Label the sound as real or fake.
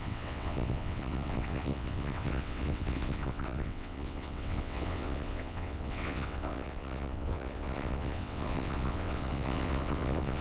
fake